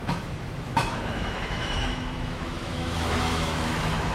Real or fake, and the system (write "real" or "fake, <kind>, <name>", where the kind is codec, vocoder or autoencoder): fake, autoencoder, DAC-VAE